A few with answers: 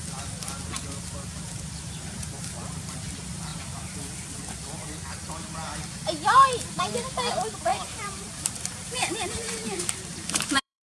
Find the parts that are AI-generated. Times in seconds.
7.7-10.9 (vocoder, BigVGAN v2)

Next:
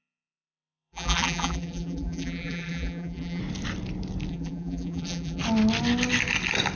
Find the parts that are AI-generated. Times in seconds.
0.0-3.4 (vocoder, BigVGAN v2); 4.3-5.4

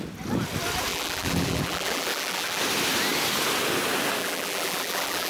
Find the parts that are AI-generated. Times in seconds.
0.9-2.6 (vocoder, BigVGAN v2); 4.2-5.3

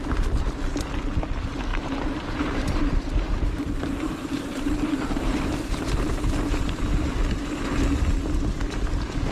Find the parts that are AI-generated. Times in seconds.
1.7-6.8 (vocoder, BigVGAN v2)

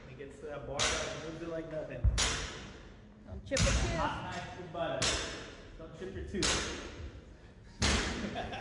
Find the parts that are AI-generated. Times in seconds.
1.4-2.2 (vocoder, BigVGAN v2); 3.6-4.8; 8.0-8.6